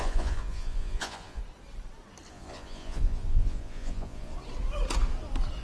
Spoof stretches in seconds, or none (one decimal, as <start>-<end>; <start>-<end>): 0.0-1.4; 2.3-4.3